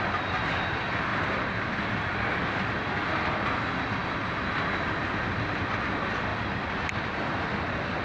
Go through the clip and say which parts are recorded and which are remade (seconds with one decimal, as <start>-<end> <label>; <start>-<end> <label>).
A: 0.0-1.1 recorded; 1.1-1.8 remade; 1.8-8.0 recorded